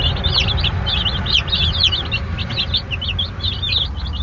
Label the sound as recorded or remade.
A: recorded